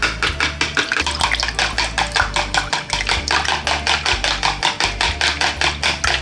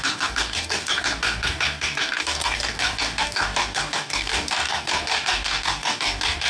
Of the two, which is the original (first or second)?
first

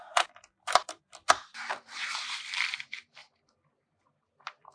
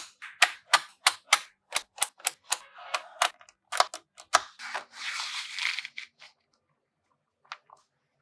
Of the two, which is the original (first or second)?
second